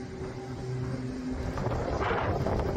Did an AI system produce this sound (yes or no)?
no